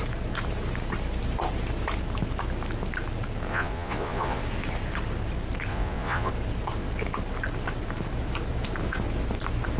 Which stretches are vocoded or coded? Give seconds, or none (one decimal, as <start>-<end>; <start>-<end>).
3.5-4.4; 5.7-6.3

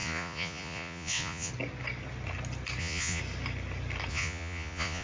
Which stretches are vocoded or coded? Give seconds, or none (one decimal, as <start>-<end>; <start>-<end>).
0.0-1.5; 2.8-3.2; 4.1-5.0

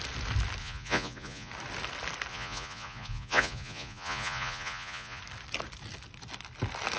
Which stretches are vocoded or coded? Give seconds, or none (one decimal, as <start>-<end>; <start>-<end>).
0.6-1.5; 2.3-5.2

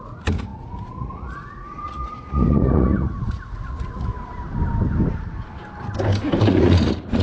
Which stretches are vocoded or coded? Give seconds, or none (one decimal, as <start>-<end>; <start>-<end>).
0.0-4.1; 6.4-7.2

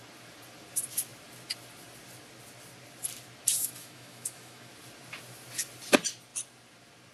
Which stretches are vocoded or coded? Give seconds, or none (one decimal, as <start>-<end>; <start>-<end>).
3.6-4.7